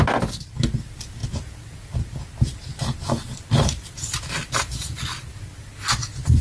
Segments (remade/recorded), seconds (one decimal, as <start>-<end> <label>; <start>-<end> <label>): 0.0-6.4 recorded